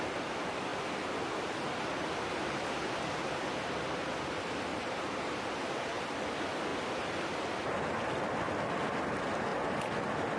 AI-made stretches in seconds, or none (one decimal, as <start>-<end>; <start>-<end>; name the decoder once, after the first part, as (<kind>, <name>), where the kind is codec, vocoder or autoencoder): 4.7-5.4 (vocoder, BigVGAN v2)